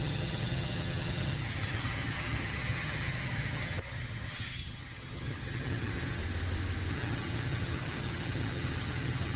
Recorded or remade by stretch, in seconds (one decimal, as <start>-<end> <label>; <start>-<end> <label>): 0.0-6.2 remade; 6.2-6.9 recorded; 6.9-9.4 remade

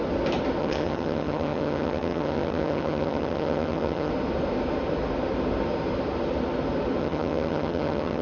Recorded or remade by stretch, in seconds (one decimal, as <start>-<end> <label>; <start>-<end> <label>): 0.0-0.6 recorded; 0.6-4.1 remade; 4.1-7.0 recorded; 7.0-8.2 remade

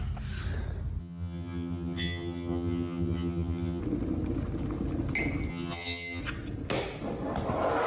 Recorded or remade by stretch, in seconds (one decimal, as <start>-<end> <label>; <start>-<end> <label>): 0.0-1.0 recorded; 1.0-3.8 remade; 3.8-5.5 recorded; 5.5-6.2 remade; 6.2-7.9 recorded

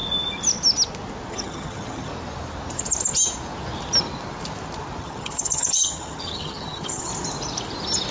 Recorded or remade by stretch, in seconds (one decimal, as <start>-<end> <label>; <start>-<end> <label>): 0.0-1.3 recorded; 1.3-2.1 remade; 2.1-5.0 recorded; 5.0-7.1 remade; 7.1-8.1 recorded

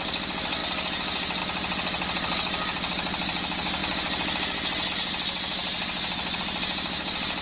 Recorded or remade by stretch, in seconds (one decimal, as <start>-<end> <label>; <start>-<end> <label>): 0.0-7.4 recorded

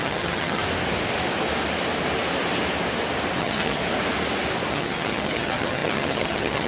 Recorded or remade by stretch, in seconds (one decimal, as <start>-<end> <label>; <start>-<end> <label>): 0.0-0.6 remade; 0.6-3.4 recorded; 3.4-3.8 remade; 3.8-4.7 recorded; 4.7-6.7 remade

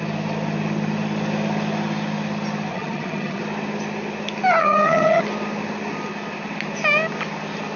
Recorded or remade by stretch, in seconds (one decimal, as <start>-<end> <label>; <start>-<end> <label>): 0.0-2.7 recorded; 2.7-3.4 remade; 3.4-4.6 recorded; 4.6-5.2 remade; 5.2-7.8 recorded